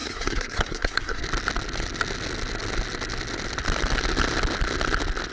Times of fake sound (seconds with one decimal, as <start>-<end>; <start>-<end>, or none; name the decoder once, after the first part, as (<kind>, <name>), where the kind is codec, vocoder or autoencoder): 0.0-1.2 (codec, SNAC)